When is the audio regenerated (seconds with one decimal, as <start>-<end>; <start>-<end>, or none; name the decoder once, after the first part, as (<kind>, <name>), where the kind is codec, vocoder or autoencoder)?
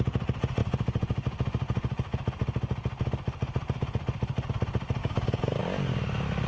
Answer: 5.0-5.6 (codec, DAC)